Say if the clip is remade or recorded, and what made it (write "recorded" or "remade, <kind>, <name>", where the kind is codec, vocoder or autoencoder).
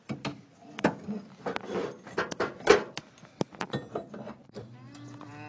recorded